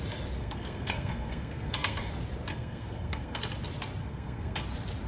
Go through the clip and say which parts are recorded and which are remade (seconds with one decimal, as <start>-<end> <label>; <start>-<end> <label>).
0.0-0.4 recorded; 0.4-2.1 remade; 2.1-2.5 recorded; 2.5-3.4 remade; 3.4-4.0 recorded; 4.0-4.6 remade; 4.6-5.1 recorded